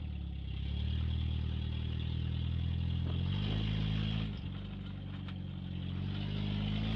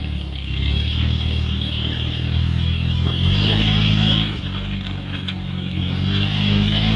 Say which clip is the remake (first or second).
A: second